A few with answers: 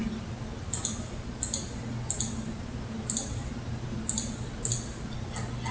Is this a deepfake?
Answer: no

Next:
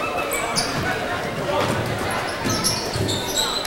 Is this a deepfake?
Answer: no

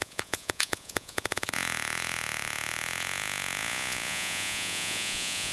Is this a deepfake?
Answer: yes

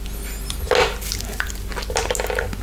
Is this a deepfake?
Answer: no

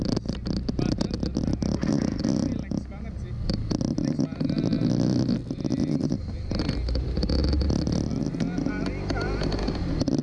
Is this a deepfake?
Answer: no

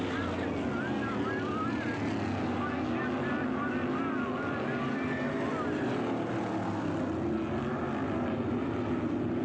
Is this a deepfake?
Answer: no